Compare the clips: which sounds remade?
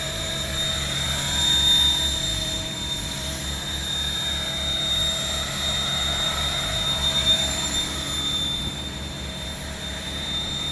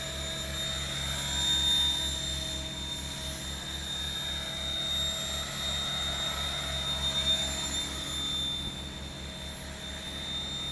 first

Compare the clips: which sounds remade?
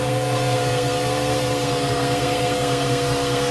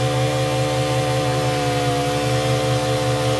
first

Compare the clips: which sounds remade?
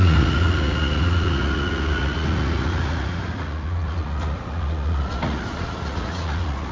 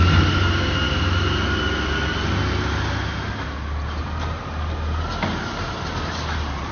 first